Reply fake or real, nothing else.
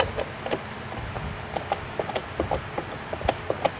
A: real